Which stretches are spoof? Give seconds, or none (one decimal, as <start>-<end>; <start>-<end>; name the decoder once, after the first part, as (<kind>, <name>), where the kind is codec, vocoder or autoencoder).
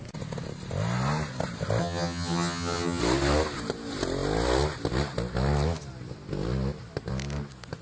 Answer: 1.8-3.0 (vocoder, HiFi-GAN)